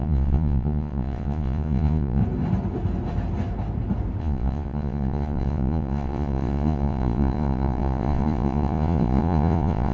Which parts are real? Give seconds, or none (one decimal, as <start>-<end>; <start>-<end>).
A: 2.2-4.2